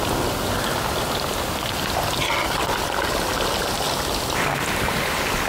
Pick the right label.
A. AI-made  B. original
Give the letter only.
B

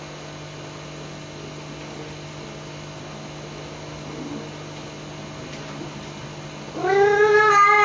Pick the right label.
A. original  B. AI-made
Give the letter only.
A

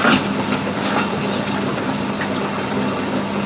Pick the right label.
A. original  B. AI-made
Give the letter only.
A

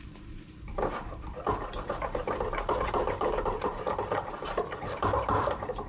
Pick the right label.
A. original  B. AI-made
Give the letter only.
B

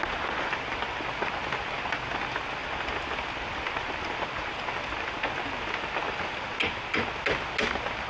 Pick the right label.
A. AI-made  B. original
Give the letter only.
B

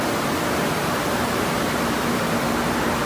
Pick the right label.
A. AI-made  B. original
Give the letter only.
A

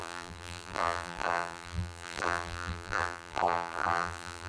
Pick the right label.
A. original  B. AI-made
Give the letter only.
B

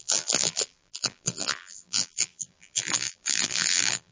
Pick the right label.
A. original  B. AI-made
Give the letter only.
B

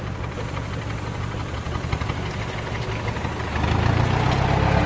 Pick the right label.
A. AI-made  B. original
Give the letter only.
B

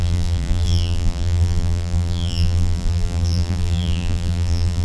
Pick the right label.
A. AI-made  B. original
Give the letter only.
A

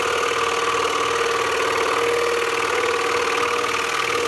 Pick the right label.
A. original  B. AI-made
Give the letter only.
A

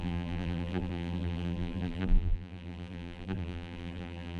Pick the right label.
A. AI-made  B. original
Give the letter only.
A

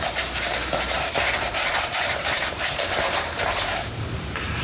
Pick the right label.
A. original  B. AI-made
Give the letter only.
B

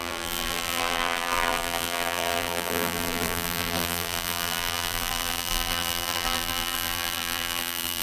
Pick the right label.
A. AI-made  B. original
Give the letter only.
A